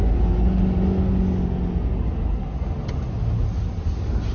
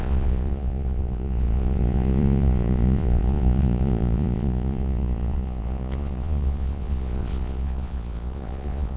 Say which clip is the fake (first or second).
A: second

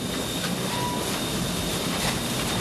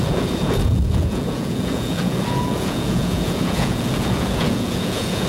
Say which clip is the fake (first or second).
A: second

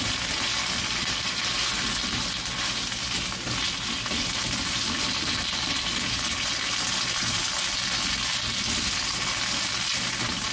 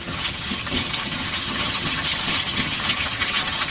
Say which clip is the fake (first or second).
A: second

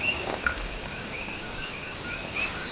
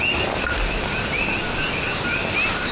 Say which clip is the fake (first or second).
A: first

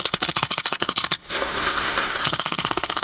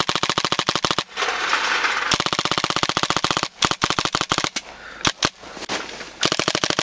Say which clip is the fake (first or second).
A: first